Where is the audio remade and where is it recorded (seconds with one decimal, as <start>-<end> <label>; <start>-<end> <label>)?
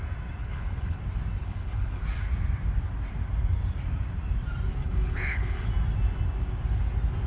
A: 0.0-0.4 recorded; 0.4-1.0 remade; 1.0-1.4 recorded; 1.4-2.0 remade; 2.0-4.8 recorded; 4.8-5.7 remade; 5.7-7.3 recorded